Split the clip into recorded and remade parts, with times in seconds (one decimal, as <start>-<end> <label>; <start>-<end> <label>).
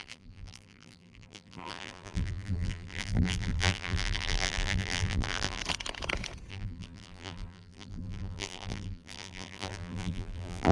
0.0-5.6 remade; 5.6-6.5 recorded; 6.5-10.7 remade